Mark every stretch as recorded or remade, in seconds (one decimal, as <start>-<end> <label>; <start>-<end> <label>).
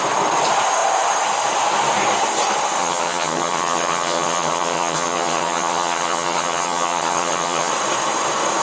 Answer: 0.0-2.8 recorded; 2.8-7.7 remade; 7.7-8.6 recorded